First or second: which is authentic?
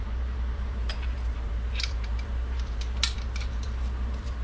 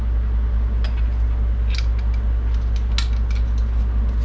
second